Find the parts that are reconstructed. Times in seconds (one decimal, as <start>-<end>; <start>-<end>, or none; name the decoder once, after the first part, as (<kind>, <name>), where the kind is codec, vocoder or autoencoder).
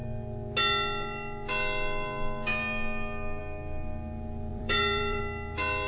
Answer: 4.5-5.2 (vocoder, BigVGAN v2)